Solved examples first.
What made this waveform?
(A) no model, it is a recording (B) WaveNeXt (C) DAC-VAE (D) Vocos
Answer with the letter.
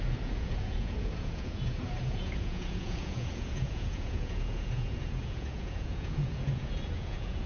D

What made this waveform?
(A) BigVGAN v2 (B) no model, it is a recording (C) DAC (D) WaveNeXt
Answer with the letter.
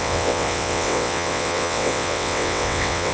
D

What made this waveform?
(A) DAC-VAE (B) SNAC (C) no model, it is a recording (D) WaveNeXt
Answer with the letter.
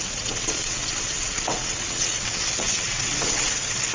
D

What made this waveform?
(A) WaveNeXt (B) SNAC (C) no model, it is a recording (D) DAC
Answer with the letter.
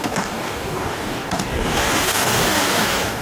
D